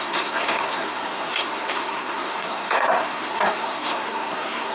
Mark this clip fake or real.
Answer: fake